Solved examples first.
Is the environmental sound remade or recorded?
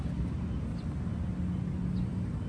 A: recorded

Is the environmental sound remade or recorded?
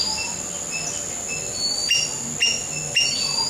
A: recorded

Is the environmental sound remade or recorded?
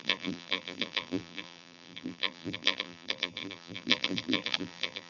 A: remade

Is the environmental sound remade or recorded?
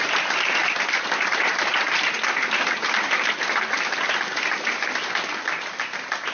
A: recorded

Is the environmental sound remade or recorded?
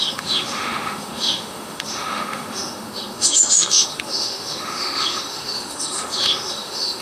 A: remade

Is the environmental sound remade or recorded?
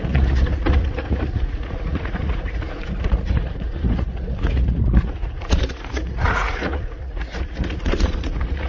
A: remade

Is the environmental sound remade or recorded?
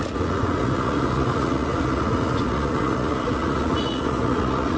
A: remade